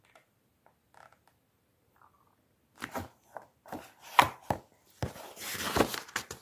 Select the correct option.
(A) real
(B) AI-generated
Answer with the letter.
A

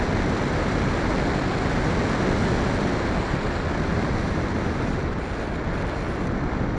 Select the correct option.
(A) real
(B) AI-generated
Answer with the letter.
A